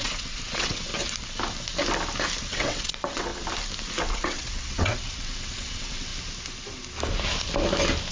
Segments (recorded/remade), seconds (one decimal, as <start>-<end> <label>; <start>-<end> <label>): 0.0-0.9 remade; 0.9-2.5 recorded; 2.5-3.3 remade; 3.3-4.1 recorded; 4.1-6.1 remade; 6.1-8.1 recorded

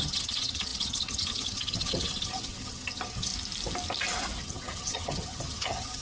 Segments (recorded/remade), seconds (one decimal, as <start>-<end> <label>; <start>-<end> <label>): 0.0-3.3 remade; 3.3-4.4 recorded; 4.4-6.0 remade